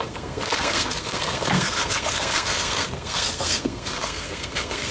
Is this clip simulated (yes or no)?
yes